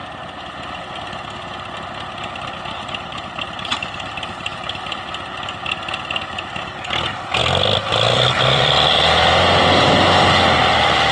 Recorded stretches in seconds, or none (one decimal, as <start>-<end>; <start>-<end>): 0.0-7.4; 9.9-11.1